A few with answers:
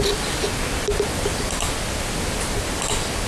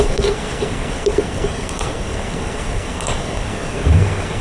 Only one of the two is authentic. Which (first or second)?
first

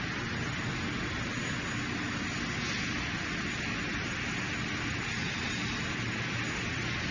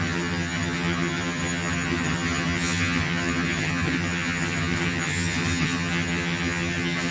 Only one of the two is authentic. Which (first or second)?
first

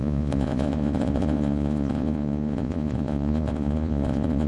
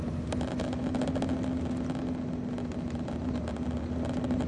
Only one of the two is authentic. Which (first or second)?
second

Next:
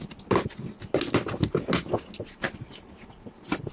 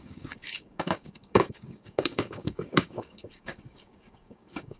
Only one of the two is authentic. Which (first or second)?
first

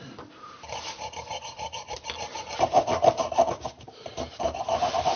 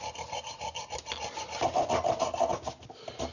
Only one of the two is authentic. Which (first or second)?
second